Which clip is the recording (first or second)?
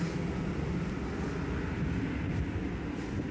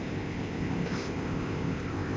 first